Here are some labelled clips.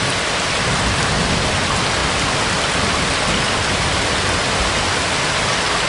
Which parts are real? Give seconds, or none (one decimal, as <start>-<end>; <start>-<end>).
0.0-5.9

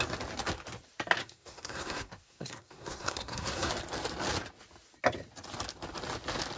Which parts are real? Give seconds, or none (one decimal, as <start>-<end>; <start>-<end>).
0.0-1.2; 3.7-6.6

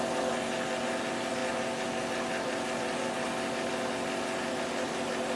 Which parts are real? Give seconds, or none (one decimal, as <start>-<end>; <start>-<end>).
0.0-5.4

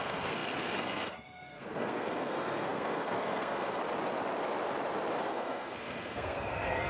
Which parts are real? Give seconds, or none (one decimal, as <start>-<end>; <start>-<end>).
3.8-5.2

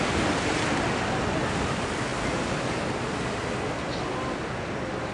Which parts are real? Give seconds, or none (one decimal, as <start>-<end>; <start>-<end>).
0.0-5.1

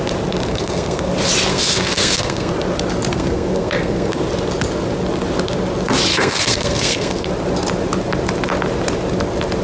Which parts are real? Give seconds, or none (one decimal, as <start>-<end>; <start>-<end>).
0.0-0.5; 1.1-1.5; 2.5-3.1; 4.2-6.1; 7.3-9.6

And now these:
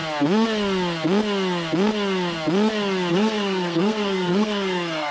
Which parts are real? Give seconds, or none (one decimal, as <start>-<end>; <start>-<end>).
0.0-3.1